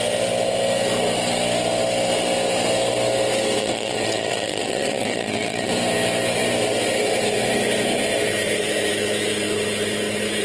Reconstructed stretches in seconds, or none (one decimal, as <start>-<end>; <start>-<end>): 3.6-5.7